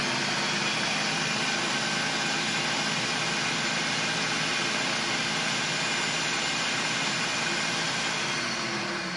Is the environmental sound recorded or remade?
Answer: recorded